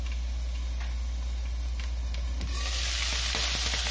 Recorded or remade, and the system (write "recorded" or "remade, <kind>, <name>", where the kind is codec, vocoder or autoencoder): recorded